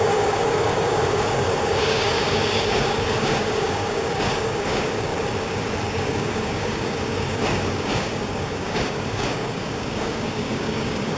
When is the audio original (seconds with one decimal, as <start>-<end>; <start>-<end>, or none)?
5.1-5.9